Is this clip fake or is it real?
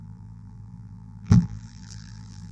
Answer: fake